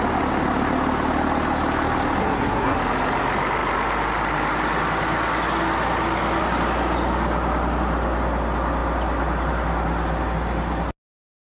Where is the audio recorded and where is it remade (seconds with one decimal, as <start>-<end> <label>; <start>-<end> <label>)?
0.0-2.2 recorded; 2.2-2.8 remade; 2.8-11.4 recorded